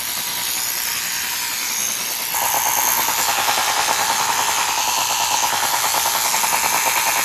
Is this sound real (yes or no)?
yes